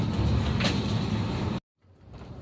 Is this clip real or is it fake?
real